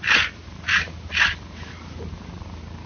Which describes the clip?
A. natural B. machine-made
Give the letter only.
A